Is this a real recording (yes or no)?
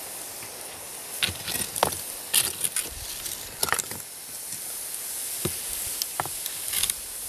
yes